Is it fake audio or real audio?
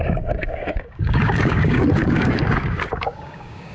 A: fake